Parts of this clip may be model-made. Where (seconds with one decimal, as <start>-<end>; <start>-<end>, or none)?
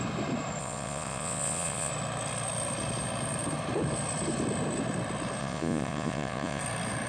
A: 0.6-1.9; 5.4-6.6